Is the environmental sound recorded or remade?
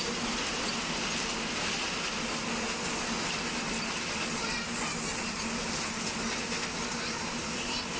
recorded